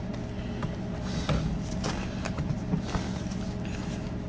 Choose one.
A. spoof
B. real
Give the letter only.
B